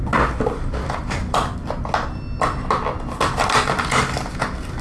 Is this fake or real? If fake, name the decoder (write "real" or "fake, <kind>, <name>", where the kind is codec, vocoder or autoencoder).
real